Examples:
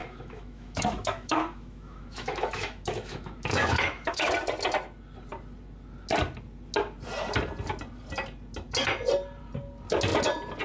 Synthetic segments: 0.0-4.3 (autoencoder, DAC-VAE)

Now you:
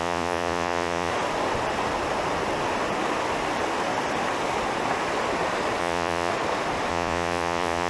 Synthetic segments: 0.0-1.1 (vocoder, Vocos); 5.8-6.3; 6.9-7.9